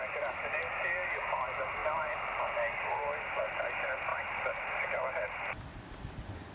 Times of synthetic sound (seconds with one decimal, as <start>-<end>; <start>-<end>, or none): 1.8-2.4; 2.9-3.5; 4.1-5.8